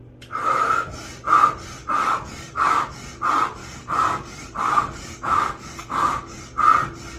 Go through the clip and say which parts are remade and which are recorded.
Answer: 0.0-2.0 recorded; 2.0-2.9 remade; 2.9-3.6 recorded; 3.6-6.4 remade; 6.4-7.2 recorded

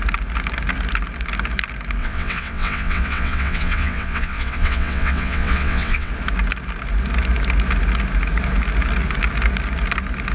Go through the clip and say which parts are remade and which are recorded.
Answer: 0.0-2.0 recorded; 2.0-6.1 remade; 6.1-10.3 recorded

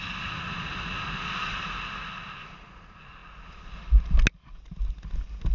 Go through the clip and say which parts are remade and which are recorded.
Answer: 0.0-5.5 recorded